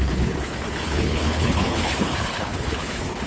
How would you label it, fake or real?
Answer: fake